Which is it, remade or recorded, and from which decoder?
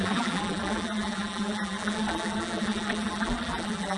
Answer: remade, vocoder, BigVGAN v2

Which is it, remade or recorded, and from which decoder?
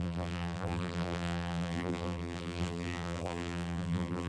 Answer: remade, vocoder, BigVGAN v2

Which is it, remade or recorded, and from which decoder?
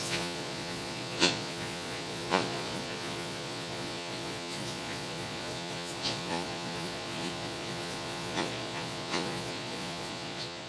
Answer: remade, vocoder, Vocos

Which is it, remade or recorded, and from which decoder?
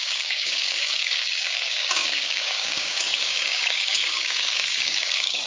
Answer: remade, codec, DAC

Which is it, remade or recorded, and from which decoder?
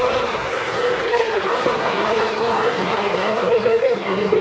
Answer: remade, codec, SNAC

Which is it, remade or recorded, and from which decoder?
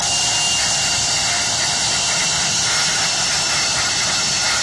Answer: recorded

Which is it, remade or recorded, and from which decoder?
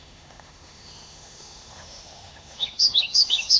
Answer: remade, autoencoder, DAC-VAE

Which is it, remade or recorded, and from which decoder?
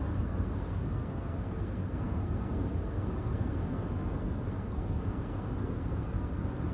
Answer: remade, codec, SNAC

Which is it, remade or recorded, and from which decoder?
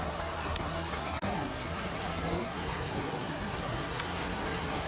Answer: remade, codec, SNAC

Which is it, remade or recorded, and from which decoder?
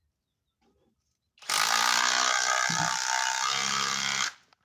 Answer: recorded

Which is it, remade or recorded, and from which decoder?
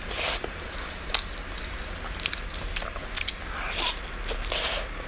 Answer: recorded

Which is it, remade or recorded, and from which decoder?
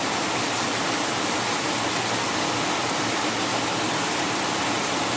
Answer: recorded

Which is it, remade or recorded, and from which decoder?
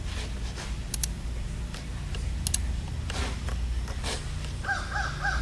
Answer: recorded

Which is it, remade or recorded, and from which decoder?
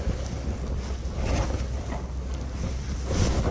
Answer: recorded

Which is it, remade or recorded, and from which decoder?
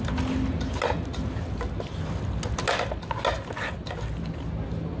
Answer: recorded